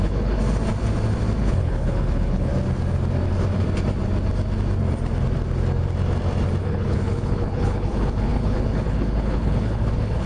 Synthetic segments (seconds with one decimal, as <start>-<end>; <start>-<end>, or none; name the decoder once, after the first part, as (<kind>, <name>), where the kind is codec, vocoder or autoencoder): 0.0-0.4 (codec, HILCodec); 1.4-2.5; 6.6-10.3